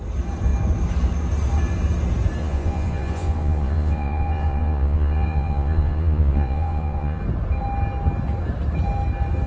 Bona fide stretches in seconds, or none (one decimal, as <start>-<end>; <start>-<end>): 0.0-2.4; 7.2-9.5